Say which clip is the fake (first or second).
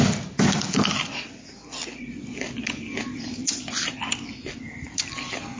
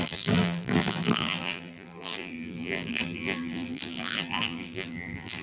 second